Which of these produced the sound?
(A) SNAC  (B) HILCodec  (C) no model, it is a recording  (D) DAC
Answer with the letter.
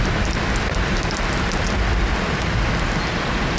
C